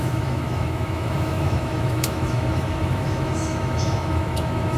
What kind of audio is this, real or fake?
fake